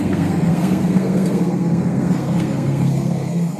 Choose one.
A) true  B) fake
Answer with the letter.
B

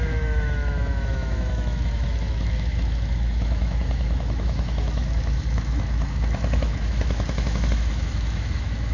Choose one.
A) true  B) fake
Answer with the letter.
B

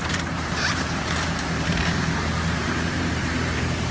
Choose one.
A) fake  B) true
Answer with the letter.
A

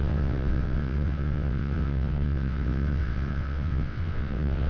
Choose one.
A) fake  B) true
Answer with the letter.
A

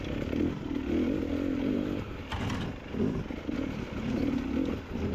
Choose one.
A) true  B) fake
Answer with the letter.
A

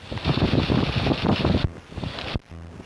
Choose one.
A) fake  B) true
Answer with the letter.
B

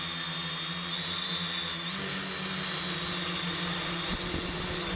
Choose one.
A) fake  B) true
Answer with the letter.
B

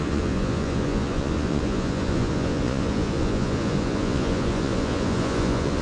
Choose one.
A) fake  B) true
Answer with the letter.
A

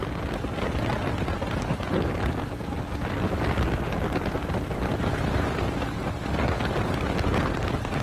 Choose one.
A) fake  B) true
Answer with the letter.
B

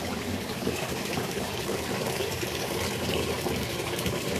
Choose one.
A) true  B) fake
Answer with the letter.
B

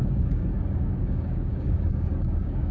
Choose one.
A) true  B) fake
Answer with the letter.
B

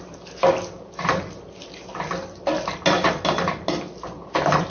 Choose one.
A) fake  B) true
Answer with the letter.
B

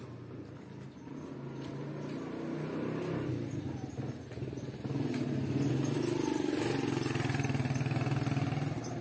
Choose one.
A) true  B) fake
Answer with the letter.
A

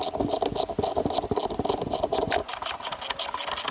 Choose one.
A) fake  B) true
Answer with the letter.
B